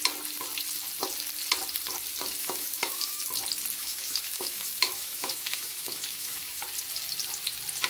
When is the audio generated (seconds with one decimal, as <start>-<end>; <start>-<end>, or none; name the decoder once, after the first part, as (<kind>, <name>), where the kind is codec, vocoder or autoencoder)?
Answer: 2.4-3.2 (autoencoder, DAC-VAE); 3.8-6.6